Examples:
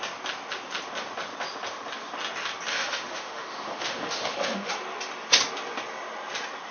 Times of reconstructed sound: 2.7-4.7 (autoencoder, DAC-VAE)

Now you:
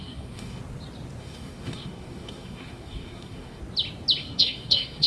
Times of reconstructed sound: 0.0-0.6 (codec, SNAC); 1.2-3.6; 4.2-5.1